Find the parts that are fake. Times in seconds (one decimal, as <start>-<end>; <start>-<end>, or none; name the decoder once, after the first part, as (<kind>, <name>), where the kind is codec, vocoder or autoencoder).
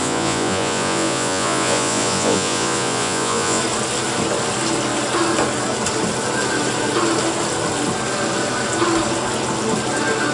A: 0.0-3.6 (vocoder, Vocos)